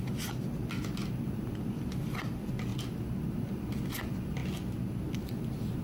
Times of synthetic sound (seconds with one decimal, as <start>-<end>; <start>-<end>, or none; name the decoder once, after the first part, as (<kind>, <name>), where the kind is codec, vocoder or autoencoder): none